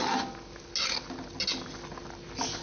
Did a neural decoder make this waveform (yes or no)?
no